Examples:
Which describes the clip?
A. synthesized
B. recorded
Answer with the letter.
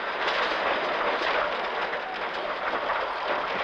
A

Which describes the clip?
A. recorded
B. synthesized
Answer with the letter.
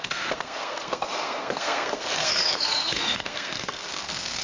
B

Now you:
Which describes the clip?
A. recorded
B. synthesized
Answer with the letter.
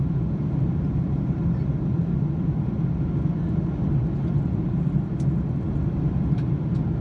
A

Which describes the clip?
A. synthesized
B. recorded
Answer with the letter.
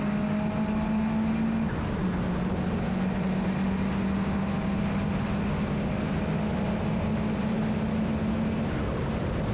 B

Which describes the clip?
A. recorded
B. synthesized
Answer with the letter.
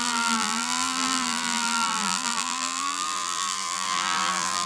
B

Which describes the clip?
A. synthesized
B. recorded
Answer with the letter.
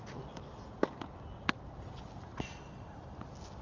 B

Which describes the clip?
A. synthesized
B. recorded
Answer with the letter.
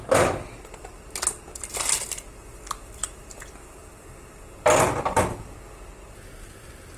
B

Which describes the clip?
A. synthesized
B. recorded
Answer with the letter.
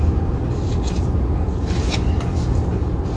B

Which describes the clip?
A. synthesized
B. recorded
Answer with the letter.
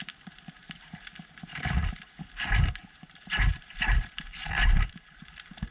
A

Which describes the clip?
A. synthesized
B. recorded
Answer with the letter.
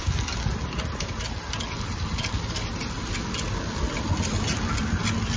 B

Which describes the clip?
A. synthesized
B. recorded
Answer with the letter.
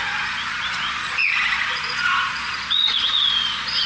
A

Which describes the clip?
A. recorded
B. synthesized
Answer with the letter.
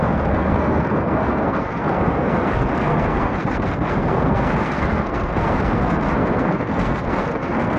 B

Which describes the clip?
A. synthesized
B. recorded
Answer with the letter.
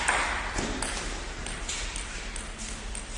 B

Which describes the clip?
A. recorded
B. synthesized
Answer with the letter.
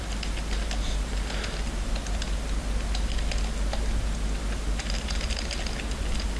A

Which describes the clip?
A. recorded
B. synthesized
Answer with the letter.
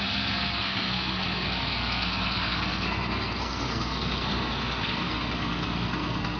B